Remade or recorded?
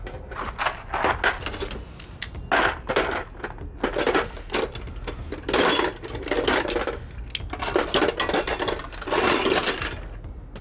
recorded